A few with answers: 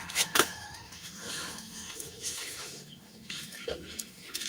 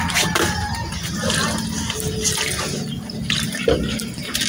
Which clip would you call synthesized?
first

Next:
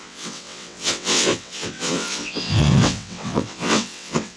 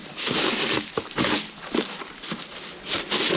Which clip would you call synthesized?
first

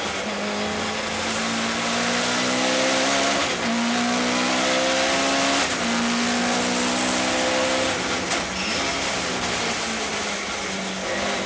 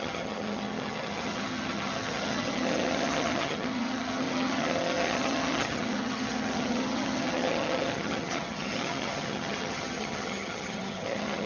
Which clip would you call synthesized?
second